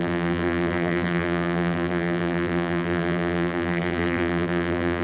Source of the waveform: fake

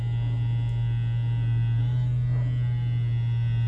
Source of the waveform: real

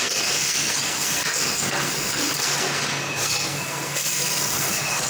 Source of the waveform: fake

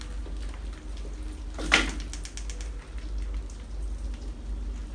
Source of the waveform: real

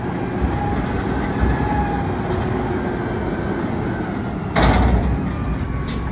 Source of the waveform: real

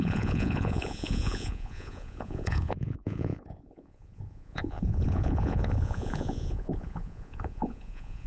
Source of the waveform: fake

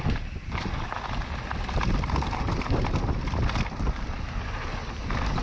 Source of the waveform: real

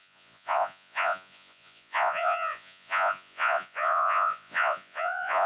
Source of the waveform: fake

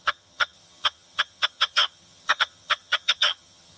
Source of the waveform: fake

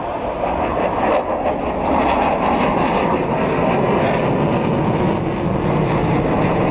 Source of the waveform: real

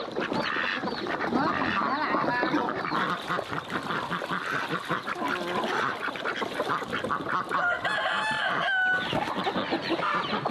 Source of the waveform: real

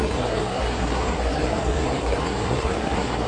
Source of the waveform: fake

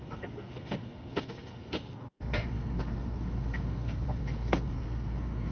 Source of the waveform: fake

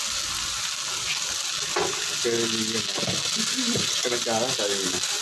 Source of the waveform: real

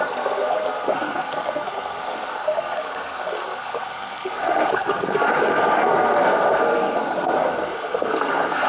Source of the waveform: fake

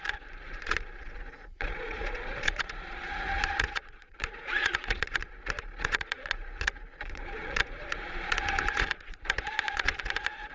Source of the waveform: fake